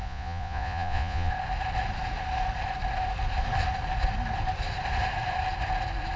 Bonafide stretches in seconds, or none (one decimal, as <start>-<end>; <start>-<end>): 1.3-6.2

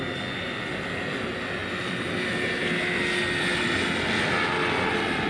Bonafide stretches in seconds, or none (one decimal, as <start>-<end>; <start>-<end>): 0.0-5.3